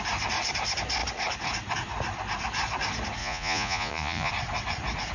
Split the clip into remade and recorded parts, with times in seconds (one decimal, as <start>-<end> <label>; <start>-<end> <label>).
0.0-3.2 recorded; 3.2-4.3 remade; 4.3-5.1 recorded